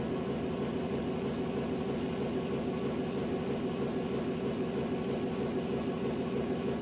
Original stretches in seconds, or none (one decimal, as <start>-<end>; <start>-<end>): 0.0-6.8

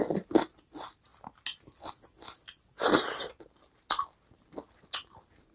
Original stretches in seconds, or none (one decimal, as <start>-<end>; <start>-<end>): 0.0-5.5

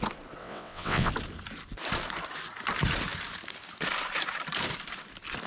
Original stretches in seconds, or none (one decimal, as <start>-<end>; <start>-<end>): 0.0-0.4; 1.1-5.5

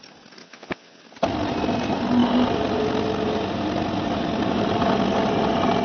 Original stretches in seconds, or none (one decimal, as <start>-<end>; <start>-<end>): 0.0-0.4; 1.0-5.8

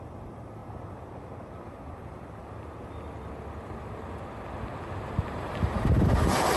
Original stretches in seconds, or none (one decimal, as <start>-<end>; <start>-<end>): 0.6-1.7; 2.4-5.0

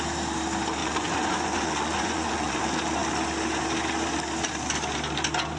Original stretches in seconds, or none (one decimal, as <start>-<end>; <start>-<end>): 0.0-0.8; 2.6-5.6

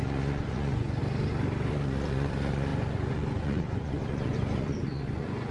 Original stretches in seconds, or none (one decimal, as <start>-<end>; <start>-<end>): 1.0-1.7